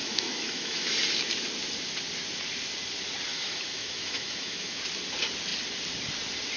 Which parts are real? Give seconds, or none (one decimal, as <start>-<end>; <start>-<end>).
0.9-3.3; 4.8-6.6